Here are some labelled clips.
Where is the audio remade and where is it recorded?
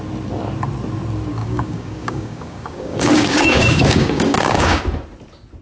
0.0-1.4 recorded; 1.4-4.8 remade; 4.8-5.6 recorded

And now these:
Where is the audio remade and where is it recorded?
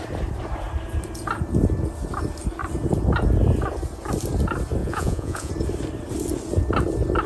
0.0-4.8 recorded; 4.8-5.5 remade; 5.5-7.3 recorded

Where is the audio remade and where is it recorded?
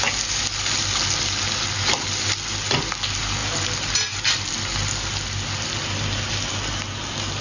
0.0-7.4 recorded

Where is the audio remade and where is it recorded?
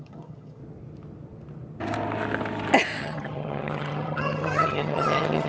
0.0-0.6 remade; 0.6-3.0 recorded; 3.0-5.5 remade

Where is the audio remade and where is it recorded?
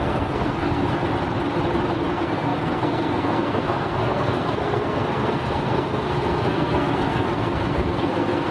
0.0-1.1 remade; 1.1-2.1 recorded; 2.1-8.5 remade